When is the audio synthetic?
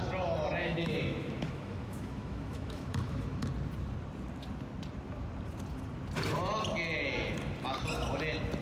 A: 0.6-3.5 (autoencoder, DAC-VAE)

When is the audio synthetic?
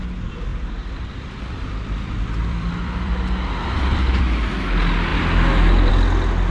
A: 0.5-4.2 (vocoder, BigVGAN v2)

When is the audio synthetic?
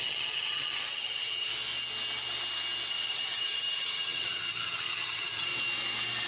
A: 0.0-1.5 (vocoder, HiFi-GAN); 2.9-5.5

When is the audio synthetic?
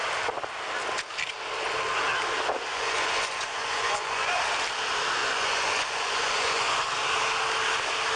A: 2.7-4.4 (vocoder, Vocos); 5.2-6.9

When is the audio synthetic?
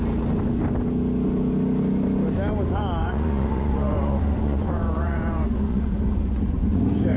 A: 3.0-7.2 (vocoder, Vocos)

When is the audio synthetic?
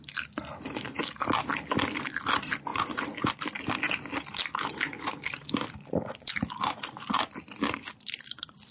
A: none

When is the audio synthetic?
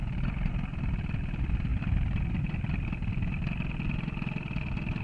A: none